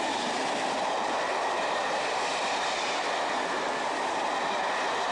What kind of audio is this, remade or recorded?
recorded